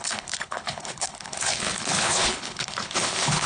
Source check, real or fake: fake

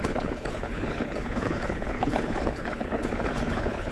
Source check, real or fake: fake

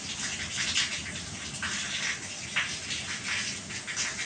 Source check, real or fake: real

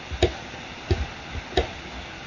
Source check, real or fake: real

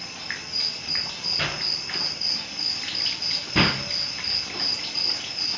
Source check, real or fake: real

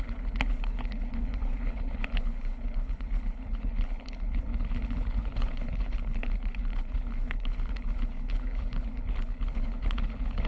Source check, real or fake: fake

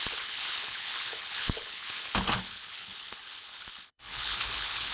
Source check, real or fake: fake